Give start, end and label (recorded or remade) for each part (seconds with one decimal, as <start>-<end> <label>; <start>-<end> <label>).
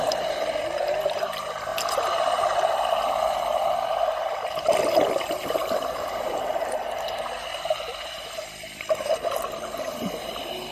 0.0-10.7 recorded